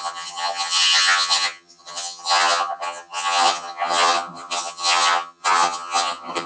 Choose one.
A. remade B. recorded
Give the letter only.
A